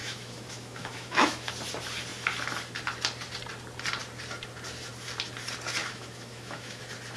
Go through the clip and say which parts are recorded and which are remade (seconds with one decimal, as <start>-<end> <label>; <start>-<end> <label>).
0.0-1.5 remade; 1.5-5.8 recorded; 5.8-6.8 remade; 6.8-7.2 recorded